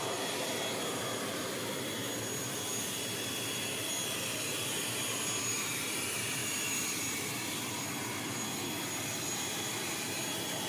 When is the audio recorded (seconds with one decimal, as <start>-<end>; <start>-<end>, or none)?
0.0-10.7